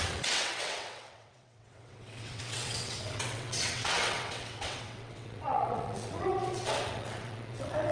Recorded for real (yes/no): no